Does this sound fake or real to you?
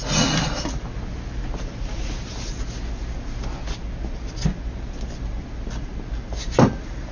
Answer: real